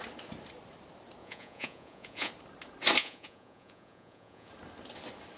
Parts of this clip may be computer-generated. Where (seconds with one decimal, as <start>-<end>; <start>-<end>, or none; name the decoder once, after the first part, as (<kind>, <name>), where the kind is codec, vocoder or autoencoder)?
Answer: 1.2-2.3 (vocoder, Vocos); 3.0-4.5